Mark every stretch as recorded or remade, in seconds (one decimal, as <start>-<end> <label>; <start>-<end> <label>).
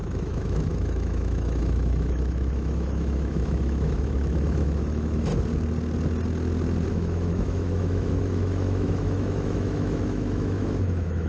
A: 0.0-5.3 remade; 5.3-6.9 recorded; 6.9-11.3 remade